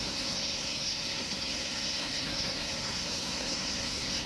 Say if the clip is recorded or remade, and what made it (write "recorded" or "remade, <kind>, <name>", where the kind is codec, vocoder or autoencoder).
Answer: remade, codec, SNAC